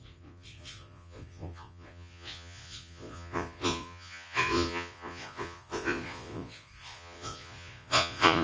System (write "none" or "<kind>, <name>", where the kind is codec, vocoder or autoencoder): vocoder, Vocos